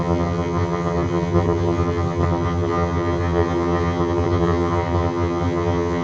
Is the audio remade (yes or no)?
yes